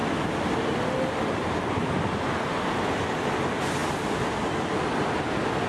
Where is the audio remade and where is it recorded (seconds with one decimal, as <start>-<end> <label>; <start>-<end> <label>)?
0.0-5.7 recorded